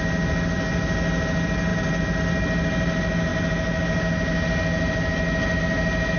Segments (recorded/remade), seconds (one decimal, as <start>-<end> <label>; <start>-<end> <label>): 0.0-6.2 recorded